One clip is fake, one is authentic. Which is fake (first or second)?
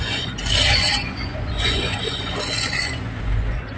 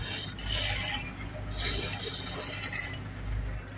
first